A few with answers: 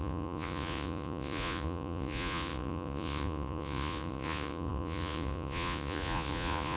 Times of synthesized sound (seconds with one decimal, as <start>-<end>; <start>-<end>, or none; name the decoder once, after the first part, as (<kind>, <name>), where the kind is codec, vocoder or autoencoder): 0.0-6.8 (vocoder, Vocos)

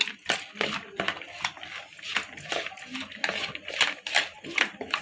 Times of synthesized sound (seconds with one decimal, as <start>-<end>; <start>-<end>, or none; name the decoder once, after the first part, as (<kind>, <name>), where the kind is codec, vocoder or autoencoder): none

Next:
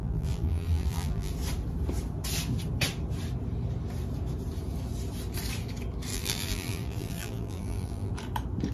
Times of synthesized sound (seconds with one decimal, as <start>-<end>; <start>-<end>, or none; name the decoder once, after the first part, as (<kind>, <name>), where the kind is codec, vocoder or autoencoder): 0.0-1.3 (vocoder, BigVGAN v2); 6.1-8.1

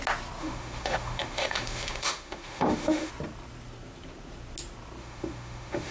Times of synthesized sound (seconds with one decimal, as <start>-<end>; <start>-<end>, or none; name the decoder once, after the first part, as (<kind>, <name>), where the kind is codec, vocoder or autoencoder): 0.4-3.1 (autoencoder, DAC-VAE); 5.0-5.9

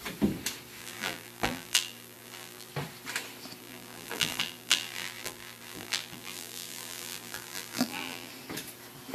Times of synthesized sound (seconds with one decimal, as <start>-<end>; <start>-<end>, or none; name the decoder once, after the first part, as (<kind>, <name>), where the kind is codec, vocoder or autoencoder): 0.8-2.7 (vocoder, BigVGAN v2); 3.6-8.3

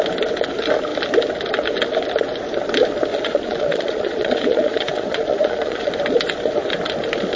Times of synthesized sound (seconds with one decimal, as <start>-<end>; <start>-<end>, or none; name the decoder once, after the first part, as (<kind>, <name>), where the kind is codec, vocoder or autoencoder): 3.1-5.9 (vocoder, Vocos)